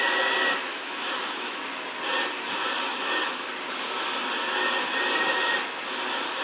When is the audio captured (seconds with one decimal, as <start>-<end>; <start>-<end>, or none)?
0.0-0.7; 1.6-2.9; 3.5-6.4